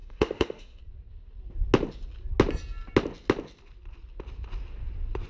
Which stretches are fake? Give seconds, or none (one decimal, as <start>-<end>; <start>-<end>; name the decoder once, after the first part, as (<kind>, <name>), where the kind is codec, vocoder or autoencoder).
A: 0.0-0.8 (autoencoder, DAC-VAE)